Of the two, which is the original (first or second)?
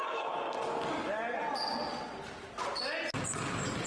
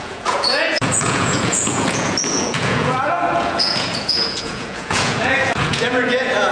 first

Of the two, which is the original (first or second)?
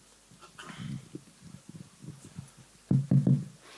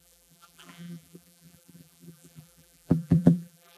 first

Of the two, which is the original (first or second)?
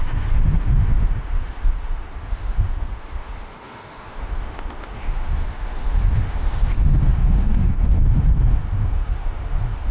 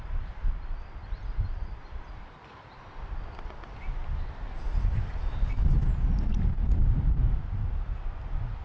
second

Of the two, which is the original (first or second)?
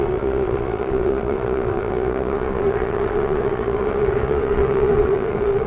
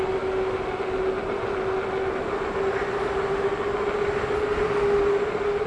second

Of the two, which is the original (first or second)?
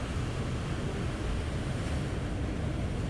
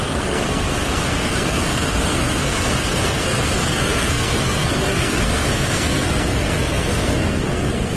first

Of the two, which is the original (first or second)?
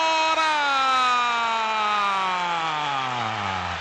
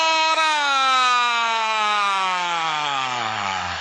first